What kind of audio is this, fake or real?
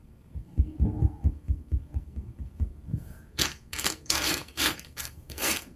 fake